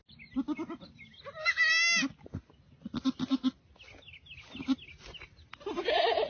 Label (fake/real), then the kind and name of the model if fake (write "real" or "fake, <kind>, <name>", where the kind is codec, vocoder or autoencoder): real